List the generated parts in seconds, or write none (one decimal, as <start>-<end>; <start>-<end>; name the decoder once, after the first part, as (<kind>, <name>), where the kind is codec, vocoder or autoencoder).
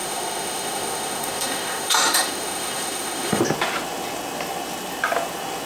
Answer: 0.0-3.4 (autoencoder, DAC-VAE)